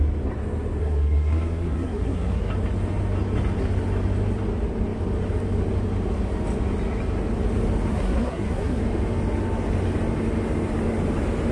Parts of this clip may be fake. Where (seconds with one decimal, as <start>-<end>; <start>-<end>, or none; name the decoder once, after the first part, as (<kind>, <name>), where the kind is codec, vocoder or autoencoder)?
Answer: 0.8-2.5 (codec, SNAC); 7.9-8.8